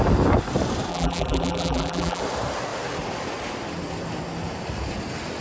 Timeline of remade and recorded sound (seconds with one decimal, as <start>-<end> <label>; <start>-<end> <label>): 0.0-0.9 recorded; 0.9-2.2 remade; 2.2-5.4 recorded